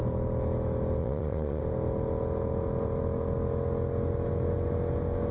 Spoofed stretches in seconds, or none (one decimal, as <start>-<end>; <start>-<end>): 1.0-1.6

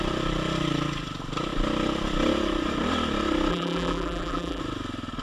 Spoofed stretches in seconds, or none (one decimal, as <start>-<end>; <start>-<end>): 3.5-4.6

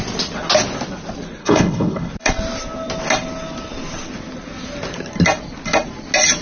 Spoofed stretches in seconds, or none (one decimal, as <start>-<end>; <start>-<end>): 1.4-2.1